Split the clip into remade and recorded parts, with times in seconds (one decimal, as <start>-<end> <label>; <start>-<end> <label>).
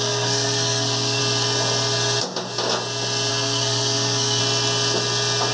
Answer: 0.0-1.2 remade; 1.2-3.3 recorded; 3.3-4.4 remade; 4.4-5.5 recorded